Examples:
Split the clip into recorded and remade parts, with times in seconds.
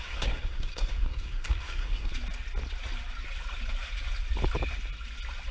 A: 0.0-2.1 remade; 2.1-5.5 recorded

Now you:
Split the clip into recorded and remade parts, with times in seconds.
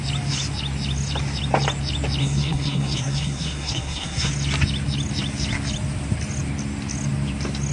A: 0.0-2.2 recorded; 2.2-4.3 remade; 4.3-7.7 recorded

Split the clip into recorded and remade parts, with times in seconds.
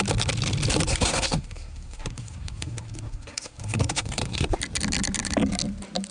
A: 0.0-0.9 recorded; 0.9-4.6 remade; 4.6-6.1 recorded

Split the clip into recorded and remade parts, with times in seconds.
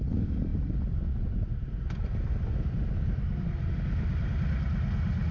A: 0.0-5.3 recorded